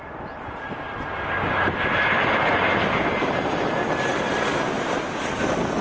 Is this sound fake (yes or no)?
no